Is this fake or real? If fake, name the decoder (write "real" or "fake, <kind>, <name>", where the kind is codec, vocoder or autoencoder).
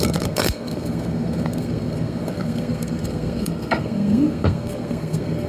fake, codec, SNAC